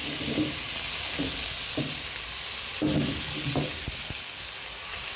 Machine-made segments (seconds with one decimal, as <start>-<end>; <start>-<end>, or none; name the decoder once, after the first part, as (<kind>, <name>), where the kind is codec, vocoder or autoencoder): none